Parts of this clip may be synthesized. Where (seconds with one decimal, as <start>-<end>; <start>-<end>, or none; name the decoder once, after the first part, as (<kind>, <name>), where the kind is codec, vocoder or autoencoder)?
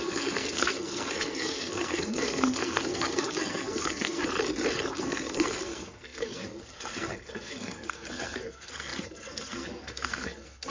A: 0.0-4.2 (codec, SNAC); 5.0-10.7